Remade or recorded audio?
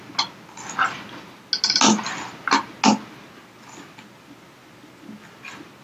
recorded